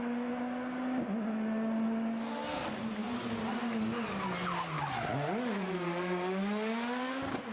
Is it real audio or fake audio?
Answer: real